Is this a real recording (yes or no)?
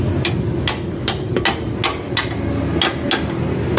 yes